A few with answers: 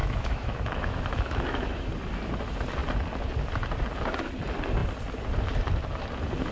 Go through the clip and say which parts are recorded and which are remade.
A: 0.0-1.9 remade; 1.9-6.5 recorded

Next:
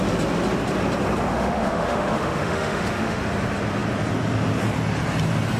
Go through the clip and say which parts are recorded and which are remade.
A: 0.0-1.3 recorded; 1.3-3.2 remade; 3.2-5.6 recorded

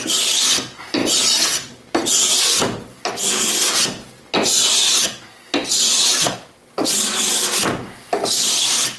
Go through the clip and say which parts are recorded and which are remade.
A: 0.0-9.0 recorded

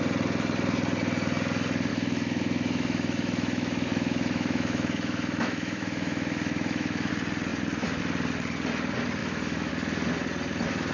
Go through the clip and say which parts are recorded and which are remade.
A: 0.0-1.9 recorded; 1.9-7.1 remade; 7.1-9.2 recorded; 9.2-9.7 remade; 9.7-10.9 recorded

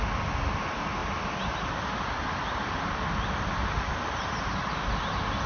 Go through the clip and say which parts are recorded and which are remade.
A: 0.0-5.5 recorded

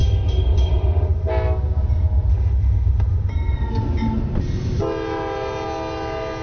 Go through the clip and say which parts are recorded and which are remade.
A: 0.0-1.3 remade; 1.3-2.3 recorded; 2.3-3.3 remade; 3.3-6.4 recorded